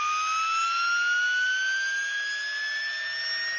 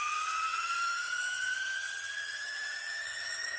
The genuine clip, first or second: first